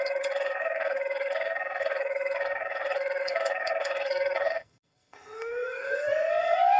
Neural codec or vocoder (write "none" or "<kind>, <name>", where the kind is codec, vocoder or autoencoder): codec, SNAC